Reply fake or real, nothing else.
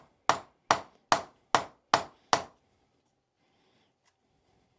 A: real